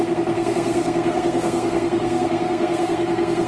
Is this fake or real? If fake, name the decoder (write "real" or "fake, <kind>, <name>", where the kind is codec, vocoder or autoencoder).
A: fake, codec, SNAC